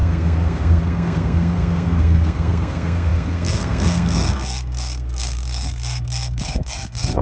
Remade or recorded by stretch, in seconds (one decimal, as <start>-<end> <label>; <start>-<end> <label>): 0.0-7.2 remade